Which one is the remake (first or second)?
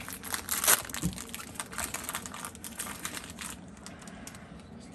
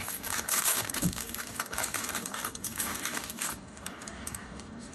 second